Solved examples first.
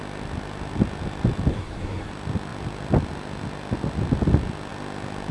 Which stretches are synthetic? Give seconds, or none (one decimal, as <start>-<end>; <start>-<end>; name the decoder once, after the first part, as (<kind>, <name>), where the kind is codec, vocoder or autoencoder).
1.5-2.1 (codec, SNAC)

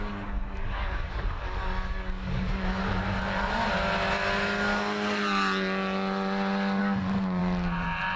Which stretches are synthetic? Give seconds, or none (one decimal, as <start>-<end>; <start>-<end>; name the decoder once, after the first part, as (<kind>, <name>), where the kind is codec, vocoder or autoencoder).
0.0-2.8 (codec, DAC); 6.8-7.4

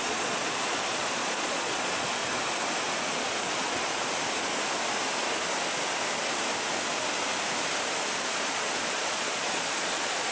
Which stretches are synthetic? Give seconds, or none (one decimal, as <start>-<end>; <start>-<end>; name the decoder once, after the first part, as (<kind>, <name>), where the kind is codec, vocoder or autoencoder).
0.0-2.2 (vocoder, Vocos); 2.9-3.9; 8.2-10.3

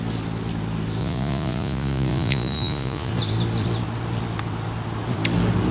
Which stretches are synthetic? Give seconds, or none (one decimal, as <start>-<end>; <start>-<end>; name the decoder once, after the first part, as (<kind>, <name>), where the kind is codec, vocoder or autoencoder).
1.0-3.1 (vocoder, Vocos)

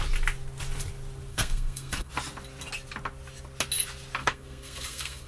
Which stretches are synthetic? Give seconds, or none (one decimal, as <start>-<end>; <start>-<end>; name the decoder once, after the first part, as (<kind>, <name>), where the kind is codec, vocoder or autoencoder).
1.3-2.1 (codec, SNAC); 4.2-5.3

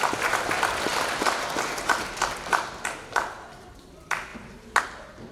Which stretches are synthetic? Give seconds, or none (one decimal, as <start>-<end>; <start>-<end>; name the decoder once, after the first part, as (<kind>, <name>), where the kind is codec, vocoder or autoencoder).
none